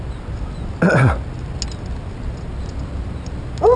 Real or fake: real